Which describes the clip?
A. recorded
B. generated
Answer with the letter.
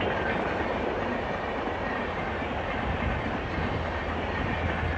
A